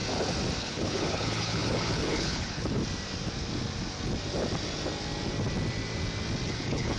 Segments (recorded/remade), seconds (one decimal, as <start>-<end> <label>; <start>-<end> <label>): 0.0-0.6 recorded; 0.6-2.8 remade; 2.8-6.5 recorded; 6.5-7.0 remade